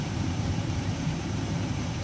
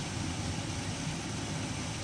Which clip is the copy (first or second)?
first